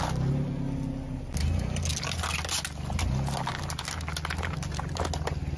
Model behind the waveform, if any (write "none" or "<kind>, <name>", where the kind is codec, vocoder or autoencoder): none